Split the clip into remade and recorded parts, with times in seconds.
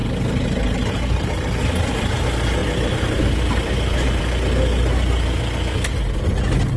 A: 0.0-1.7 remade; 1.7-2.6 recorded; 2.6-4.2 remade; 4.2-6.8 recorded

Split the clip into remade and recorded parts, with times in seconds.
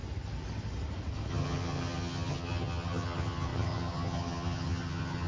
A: 0.0-1.3 recorded; 1.3-5.3 remade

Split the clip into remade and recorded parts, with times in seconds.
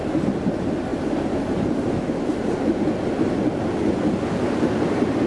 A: 0.0-5.3 recorded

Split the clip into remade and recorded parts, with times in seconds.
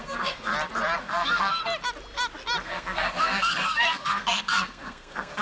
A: 0.0-0.5 remade; 0.5-1.0 recorded; 1.0-1.6 remade; 1.6-2.6 recorded; 2.6-5.4 remade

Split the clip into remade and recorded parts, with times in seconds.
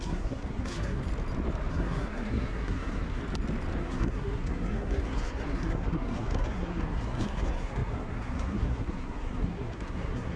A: 0.0-1.0 remade; 1.0-1.7 recorded; 1.7-3.2 remade; 3.2-3.8 recorded; 3.8-10.4 remade